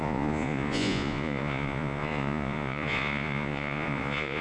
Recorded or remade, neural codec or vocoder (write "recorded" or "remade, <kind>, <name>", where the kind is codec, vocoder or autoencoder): remade, vocoder, Vocos